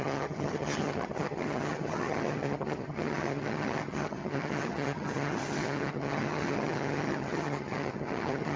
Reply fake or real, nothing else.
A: fake